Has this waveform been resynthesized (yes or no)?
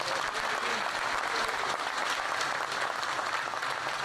no